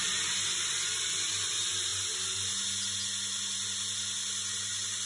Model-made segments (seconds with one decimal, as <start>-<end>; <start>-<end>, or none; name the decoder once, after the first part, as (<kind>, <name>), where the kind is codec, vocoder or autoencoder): none